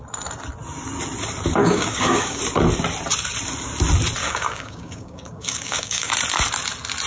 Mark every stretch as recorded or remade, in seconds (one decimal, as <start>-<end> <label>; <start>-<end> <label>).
0.0-1.6 recorded; 1.6-2.4 remade; 2.4-4.2 recorded; 4.2-6.1 remade; 6.1-7.1 recorded